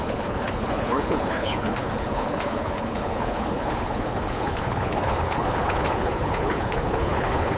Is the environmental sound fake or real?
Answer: fake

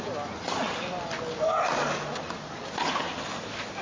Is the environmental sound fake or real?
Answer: real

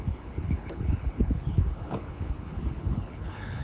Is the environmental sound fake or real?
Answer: fake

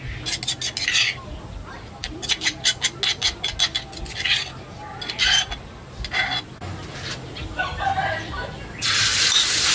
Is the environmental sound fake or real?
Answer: real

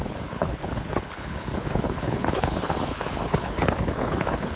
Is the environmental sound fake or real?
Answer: fake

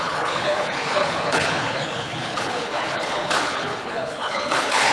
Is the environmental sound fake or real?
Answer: fake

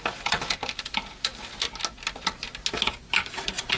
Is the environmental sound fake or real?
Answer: real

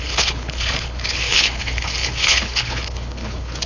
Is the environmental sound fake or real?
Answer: fake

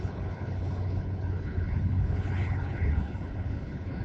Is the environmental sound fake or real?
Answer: fake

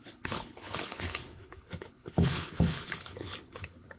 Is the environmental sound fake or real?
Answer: fake